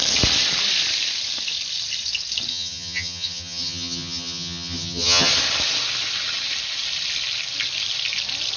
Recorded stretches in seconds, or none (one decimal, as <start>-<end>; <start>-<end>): 0.0-2.5; 5.3-8.6